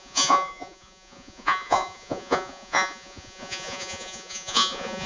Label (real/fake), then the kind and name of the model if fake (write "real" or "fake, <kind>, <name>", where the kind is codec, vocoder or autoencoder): fake, vocoder, Vocos